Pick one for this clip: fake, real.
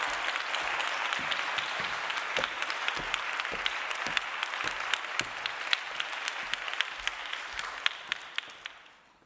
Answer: real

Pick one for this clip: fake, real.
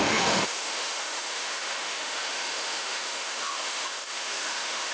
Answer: fake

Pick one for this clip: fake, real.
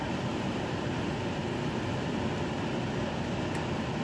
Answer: real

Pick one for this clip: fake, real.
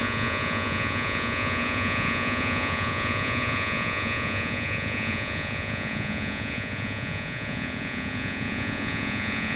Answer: fake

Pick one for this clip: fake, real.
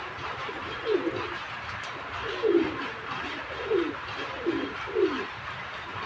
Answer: fake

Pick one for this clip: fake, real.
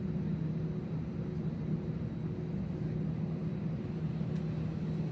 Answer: real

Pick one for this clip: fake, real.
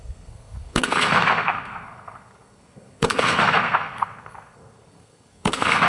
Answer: fake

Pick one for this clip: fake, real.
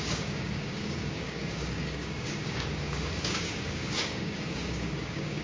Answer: fake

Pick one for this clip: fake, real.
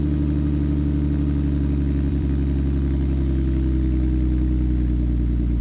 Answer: fake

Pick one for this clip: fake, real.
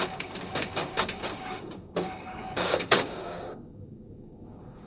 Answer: fake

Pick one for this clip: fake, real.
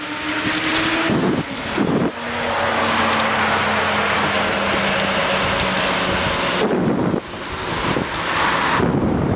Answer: real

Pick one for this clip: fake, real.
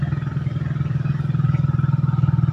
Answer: real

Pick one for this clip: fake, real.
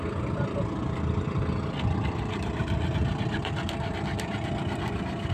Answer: real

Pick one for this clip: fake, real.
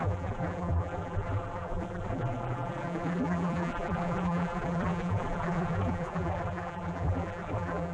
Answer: fake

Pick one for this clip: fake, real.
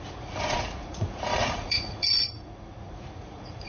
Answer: fake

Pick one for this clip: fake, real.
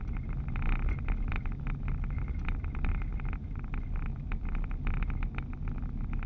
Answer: real